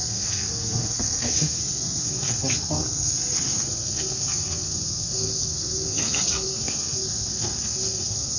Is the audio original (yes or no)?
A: no